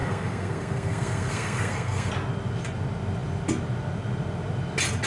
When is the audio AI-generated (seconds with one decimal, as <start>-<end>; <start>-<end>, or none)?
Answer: 0.0-2.1